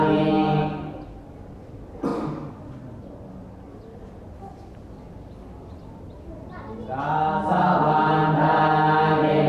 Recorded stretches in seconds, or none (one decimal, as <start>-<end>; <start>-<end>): 0.0-9.5